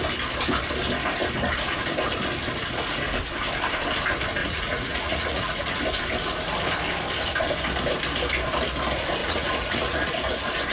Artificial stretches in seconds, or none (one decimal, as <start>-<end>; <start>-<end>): 4.4-5.8; 9.2-10.1